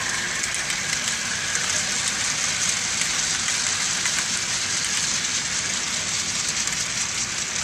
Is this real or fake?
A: real